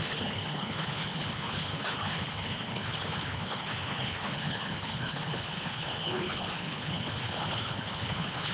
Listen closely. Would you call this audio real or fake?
fake